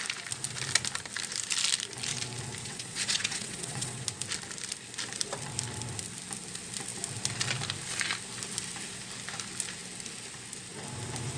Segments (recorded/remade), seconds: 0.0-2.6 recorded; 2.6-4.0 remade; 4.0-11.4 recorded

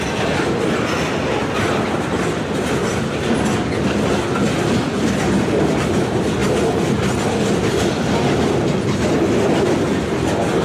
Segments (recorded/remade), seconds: 0.0-10.6 recorded